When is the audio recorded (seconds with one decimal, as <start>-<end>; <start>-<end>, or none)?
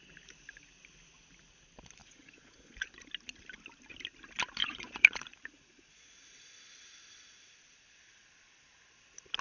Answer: 0.0-2.0; 2.9-4.6; 6.4-9.4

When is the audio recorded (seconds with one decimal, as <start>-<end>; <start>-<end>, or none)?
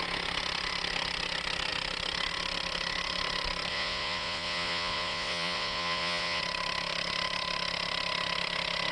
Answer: 0.0-3.7; 6.4-8.9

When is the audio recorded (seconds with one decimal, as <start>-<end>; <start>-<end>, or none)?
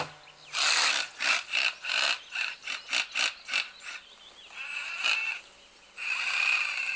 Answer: 0.0-7.0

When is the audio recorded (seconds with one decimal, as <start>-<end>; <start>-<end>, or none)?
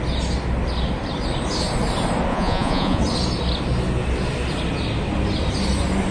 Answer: 0.0-2.3; 3.0-6.1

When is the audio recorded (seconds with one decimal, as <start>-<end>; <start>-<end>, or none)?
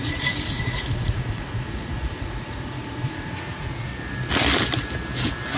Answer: 3.9-5.6